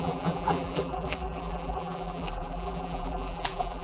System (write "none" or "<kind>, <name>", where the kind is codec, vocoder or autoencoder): vocoder, BigVGAN v2